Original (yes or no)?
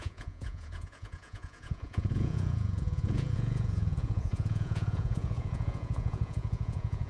no